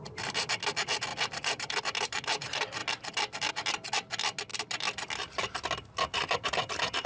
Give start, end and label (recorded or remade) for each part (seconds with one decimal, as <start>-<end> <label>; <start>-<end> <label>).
0.0-1.1 recorded; 1.1-1.8 remade; 1.8-7.1 recorded